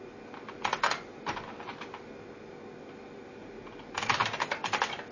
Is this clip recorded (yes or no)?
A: yes